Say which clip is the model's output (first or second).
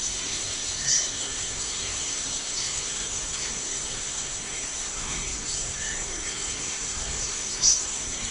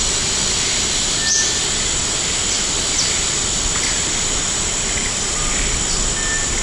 first